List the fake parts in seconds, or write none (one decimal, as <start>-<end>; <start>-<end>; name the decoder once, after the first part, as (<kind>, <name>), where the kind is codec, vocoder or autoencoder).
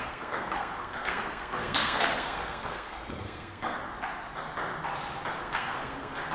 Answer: 0.0-3.8 (codec, SNAC); 5.3-6.3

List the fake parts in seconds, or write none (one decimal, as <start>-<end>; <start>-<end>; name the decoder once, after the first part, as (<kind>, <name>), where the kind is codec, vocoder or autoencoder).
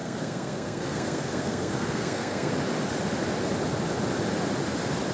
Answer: 0.0-2.5 (codec, SNAC)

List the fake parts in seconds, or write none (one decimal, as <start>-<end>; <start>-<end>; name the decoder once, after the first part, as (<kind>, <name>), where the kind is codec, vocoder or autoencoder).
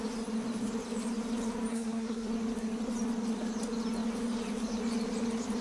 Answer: 1.7-2.3 (codec, SNAC)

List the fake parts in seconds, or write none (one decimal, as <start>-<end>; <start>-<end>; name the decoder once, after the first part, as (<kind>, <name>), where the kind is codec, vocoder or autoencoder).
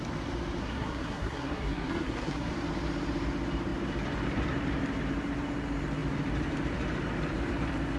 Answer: 0.6-2.5 (codec, SNAC)